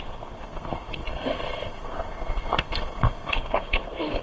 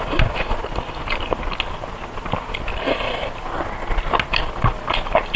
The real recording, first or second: second